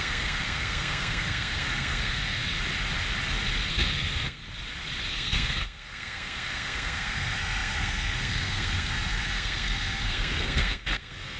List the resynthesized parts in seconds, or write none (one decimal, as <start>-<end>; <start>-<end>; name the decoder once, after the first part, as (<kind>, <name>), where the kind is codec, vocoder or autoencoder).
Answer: 0.0-2.4 (codec, SNAC); 3.7-4.4; 5.1-11.4